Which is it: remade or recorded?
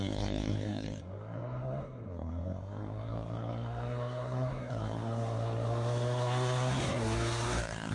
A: remade